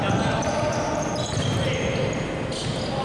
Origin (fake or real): real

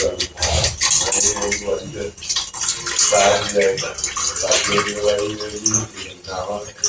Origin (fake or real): real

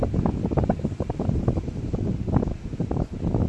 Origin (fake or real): real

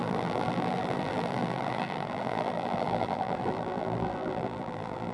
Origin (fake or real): fake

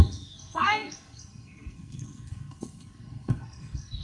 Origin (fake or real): fake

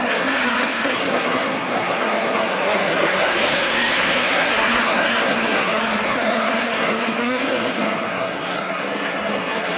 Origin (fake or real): fake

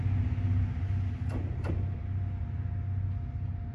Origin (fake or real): real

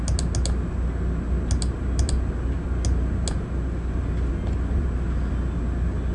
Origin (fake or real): real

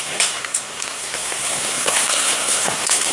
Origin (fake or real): fake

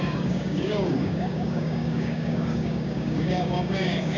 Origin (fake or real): fake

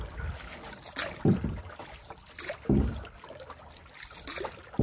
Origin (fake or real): real